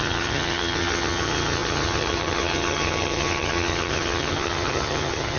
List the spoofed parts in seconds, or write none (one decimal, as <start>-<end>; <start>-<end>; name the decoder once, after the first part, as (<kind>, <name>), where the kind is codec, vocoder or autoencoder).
0.0-5.4 (vocoder, HiFi-GAN)